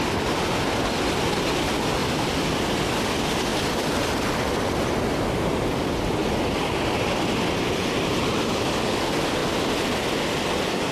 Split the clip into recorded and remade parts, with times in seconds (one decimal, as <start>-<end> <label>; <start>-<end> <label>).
0.0-2.0 recorded; 2.0-2.9 remade; 2.9-3.5 recorded; 3.5-4.2 remade; 4.2-6.2 recorded; 6.2-9.0 remade; 9.0-10.9 recorded